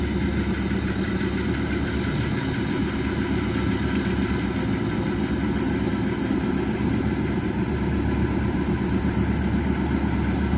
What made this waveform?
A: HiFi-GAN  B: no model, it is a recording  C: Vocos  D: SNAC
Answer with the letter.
B